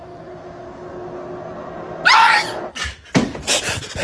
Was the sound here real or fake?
real